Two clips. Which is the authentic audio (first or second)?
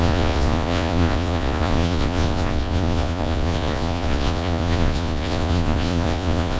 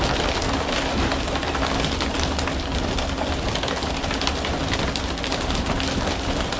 second